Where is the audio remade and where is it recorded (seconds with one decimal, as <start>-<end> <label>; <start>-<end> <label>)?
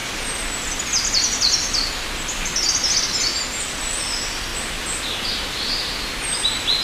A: 0.0-3.3 recorded; 3.3-3.8 remade; 3.8-6.8 recorded